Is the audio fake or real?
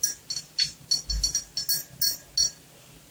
real